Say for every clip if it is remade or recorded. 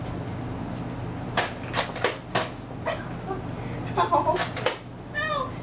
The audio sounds recorded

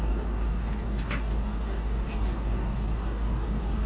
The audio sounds remade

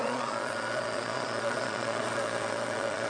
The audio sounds remade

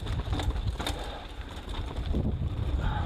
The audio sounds recorded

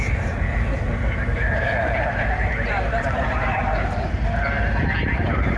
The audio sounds remade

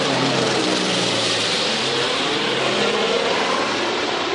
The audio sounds remade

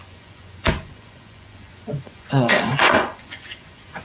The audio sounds remade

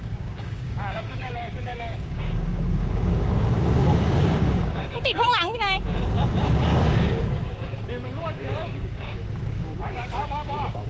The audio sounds remade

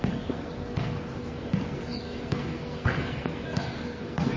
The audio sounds remade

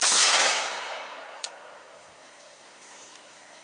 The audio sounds remade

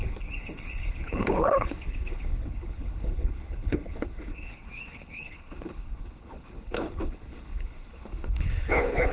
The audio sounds remade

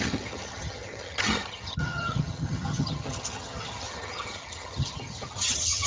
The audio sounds remade